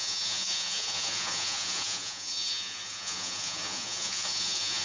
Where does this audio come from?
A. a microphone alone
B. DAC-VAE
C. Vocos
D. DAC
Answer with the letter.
C